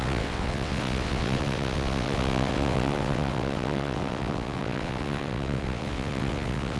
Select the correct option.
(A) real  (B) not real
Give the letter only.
B